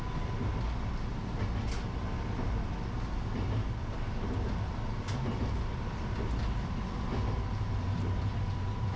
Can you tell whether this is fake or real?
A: real